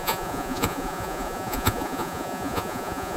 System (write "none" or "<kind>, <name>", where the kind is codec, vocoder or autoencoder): vocoder, Vocos